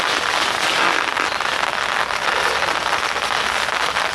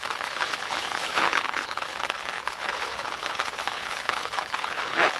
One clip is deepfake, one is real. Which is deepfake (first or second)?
second